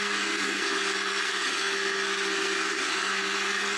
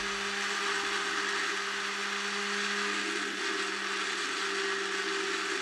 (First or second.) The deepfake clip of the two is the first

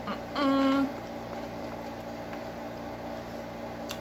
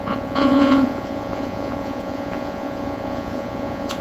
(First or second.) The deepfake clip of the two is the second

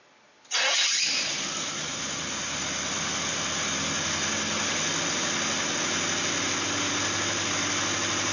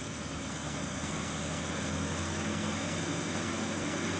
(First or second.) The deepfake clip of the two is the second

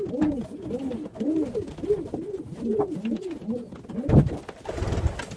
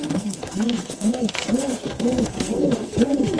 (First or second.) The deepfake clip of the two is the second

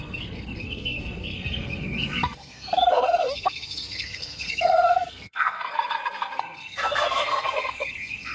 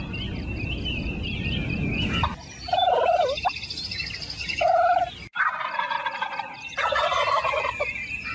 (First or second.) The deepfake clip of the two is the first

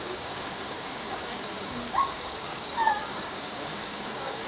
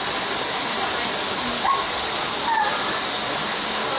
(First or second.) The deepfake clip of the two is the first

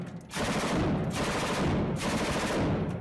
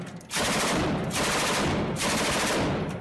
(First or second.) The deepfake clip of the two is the second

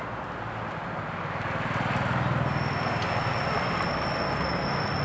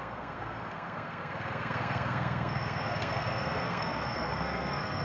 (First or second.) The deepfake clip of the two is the second